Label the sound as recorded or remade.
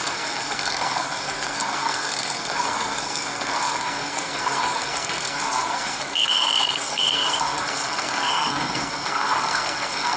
remade